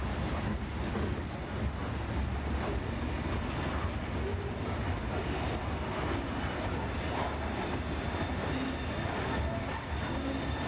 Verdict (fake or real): real